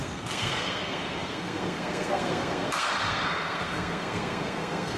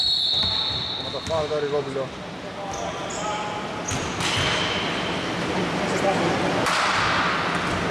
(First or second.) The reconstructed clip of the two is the first